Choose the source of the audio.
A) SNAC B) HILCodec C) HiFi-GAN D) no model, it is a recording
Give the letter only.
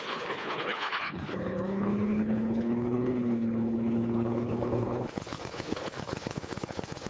B